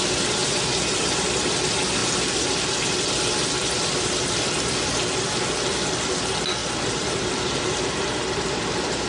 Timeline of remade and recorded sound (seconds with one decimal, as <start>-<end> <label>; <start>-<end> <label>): 0.0-6.6 recorded; 6.6-9.1 remade